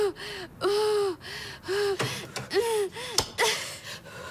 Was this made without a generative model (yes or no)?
yes